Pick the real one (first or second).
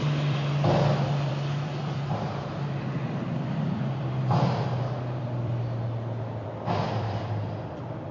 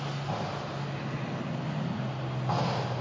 second